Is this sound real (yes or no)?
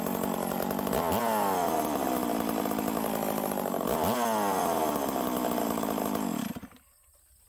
yes